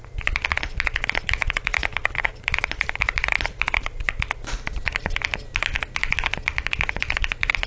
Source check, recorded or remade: recorded